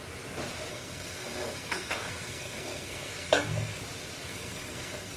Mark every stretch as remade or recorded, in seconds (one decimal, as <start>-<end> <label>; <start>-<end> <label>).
0.0-0.7 recorded; 0.7-3.8 remade; 3.8-4.3 recorded; 4.3-5.2 remade